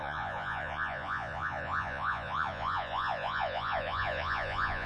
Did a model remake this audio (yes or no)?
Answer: yes